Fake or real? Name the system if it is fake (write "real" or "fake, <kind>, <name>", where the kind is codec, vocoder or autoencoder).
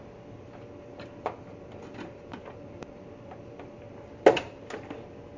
real